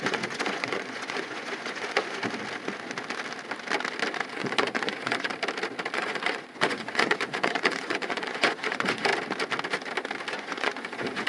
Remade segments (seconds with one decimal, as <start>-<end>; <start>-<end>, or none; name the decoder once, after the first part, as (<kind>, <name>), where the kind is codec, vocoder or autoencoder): 0.0-2.2 (vocoder, Vocos); 4.3-5.3; 5.9-9.1; 10.3-11.3